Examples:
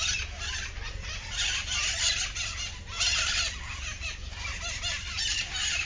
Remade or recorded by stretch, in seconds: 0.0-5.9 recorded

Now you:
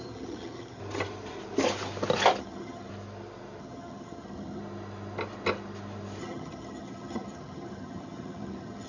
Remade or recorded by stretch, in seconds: 0.0-0.8 remade; 0.8-2.4 recorded; 2.4-2.9 remade; 2.9-3.6 recorded; 3.6-4.6 remade; 4.6-6.2 recorded; 6.2-8.9 remade

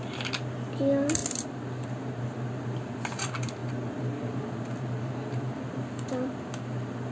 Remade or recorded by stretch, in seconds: 0.0-7.1 recorded